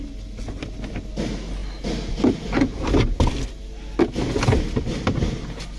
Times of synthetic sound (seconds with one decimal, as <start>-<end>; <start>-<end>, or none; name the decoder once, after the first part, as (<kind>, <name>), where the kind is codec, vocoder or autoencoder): none